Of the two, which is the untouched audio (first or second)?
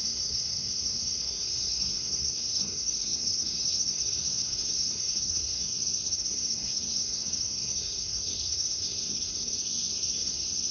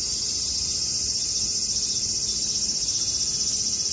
second